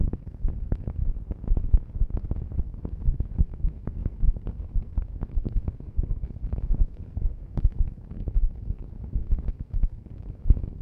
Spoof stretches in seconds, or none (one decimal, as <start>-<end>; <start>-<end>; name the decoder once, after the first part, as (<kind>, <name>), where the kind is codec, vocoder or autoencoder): 0.0-1.0 (codec, SNAC); 2.6-10.8